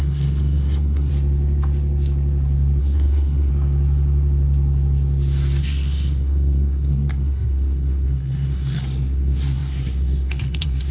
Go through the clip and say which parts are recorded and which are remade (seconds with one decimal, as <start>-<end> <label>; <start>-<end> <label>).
0.0-1.1 remade; 1.1-2.8 recorded; 2.8-3.5 remade; 3.5-5.6 recorded; 5.6-10.9 remade